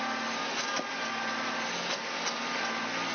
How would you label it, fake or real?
real